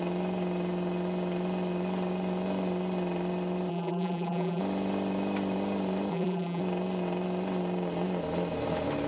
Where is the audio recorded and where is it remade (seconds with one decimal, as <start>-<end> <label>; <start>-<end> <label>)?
0.0-3.7 recorded; 3.7-4.6 remade; 4.6-6.1 recorded; 6.1-6.6 remade; 6.6-9.1 recorded